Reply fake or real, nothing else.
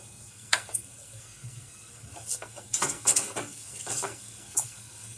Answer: fake